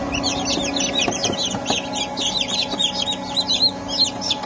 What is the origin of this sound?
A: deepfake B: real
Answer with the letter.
B